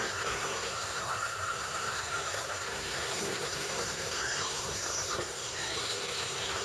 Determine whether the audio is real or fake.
fake